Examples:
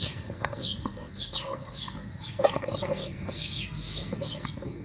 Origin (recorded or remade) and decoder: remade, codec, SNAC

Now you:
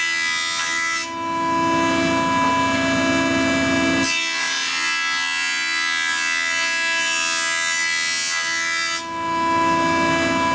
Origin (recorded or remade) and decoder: recorded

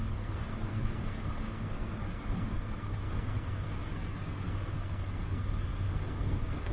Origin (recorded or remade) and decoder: remade, codec, SNAC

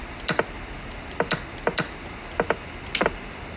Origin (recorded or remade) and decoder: recorded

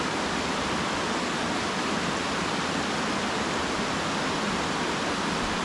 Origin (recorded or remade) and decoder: recorded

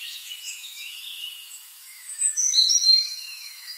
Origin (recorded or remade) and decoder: remade, autoencoder, DAC-VAE